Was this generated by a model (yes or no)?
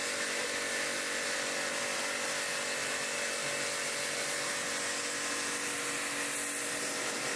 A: no